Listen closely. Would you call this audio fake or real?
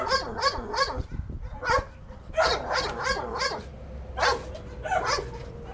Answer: real